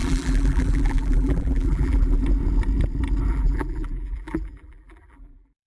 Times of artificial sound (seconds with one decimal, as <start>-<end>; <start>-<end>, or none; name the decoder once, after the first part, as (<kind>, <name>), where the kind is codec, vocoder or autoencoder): 0.0-2.2 (vocoder, BigVGAN v2); 3.3-5.7